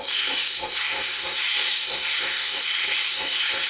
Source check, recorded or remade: remade